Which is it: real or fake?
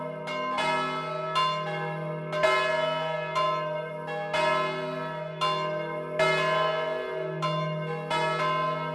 real